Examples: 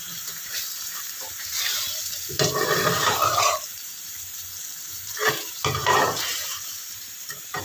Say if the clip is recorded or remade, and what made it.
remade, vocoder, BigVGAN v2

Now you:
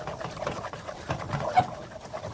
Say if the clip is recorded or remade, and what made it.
recorded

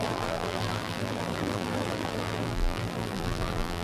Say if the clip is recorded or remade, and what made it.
remade, vocoder, BigVGAN v2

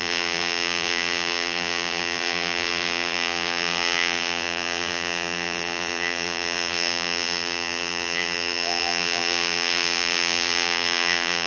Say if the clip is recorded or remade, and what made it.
remade, vocoder, BigVGAN v2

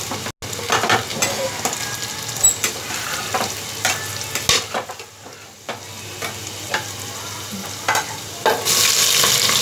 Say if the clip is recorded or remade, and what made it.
recorded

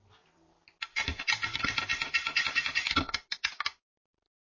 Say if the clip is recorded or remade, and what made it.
recorded